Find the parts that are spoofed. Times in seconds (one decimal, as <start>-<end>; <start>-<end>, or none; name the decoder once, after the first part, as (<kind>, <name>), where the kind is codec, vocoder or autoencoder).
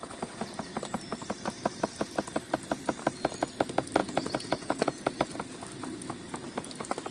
4.0-5.1 (vocoder, Vocos)